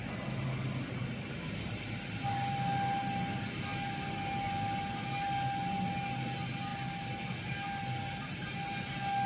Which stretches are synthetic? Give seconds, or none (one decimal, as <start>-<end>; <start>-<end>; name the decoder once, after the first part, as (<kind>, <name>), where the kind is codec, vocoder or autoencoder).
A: none

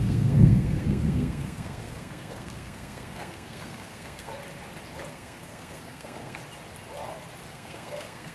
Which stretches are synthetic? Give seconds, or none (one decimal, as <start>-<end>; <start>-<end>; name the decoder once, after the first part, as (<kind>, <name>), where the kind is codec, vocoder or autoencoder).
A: 0.0-4.3 (codec, SNAC); 5.1-6.4; 7.5-8.3

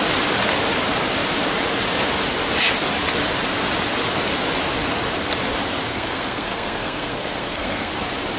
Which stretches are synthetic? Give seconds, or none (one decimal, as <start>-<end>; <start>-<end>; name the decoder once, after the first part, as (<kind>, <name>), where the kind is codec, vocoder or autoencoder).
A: 5.9-7.9 (codec, SNAC)